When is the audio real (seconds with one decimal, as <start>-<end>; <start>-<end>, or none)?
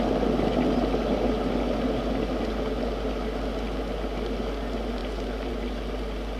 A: 0.0-6.4